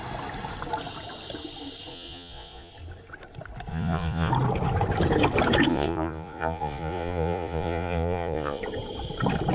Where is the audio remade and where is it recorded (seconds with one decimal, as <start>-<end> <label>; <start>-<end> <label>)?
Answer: 0.0-1.9 recorded; 1.9-2.7 remade; 2.7-3.7 recorded; 3.7-4.3 remade; 4.3-5.7 recorded; 5.7-8.6 remade; 8.6-9.5 recorded